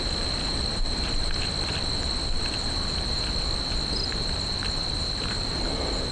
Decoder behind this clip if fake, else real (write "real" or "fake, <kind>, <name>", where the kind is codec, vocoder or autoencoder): real